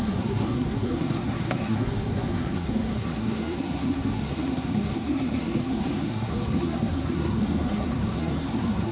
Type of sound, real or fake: fake